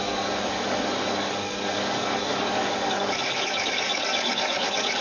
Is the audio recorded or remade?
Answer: remade